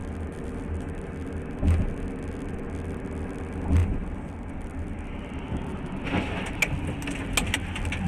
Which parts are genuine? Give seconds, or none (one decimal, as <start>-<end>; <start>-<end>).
0.0-8.1